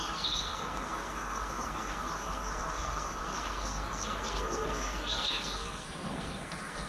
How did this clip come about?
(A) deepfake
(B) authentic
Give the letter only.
A